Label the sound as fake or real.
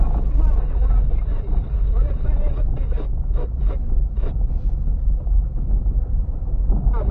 real